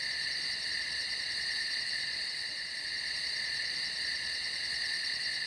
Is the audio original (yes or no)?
no